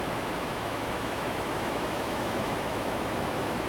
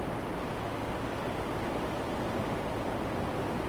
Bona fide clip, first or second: second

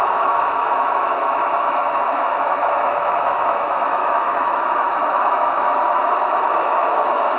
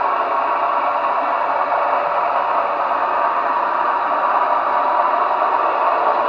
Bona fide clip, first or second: second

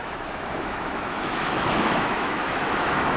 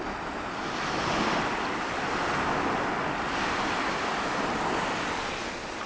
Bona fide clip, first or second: second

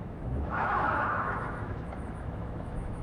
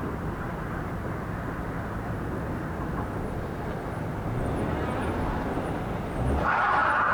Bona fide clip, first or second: second